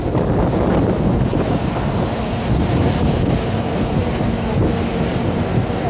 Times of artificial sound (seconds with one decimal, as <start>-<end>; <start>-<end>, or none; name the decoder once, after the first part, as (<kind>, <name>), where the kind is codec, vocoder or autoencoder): none